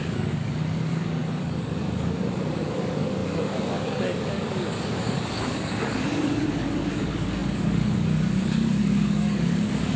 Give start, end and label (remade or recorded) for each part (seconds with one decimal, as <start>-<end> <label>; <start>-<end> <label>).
0.0-10.0 remade